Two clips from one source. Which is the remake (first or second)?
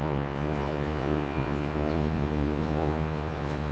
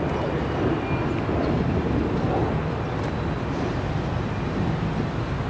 first